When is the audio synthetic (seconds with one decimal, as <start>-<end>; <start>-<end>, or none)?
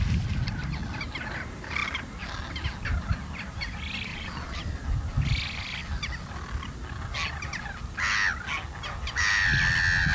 4.1-4.6